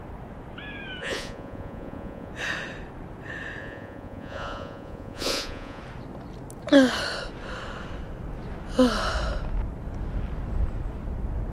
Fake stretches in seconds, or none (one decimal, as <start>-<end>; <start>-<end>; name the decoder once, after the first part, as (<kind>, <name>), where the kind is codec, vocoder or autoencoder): 1.0-2.3 (vocoder, Vocos); 3.6-5.8